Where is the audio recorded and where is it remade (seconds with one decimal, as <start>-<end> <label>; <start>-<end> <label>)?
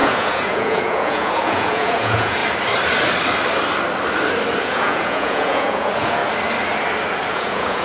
0.0-2.4 remade; 2.4-4.6 recorded; 4.6-6.2 remade; 6.2-7.3 recorded; 7.3-7.8 remade